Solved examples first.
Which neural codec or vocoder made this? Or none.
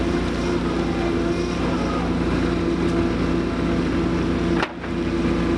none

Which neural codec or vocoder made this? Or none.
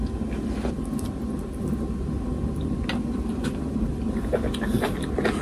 none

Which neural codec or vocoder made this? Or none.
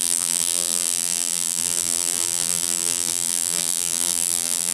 vocoder, BigVGAN v2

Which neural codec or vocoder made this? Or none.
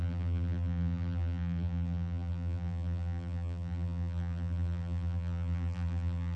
vocoder, BigVGAN v2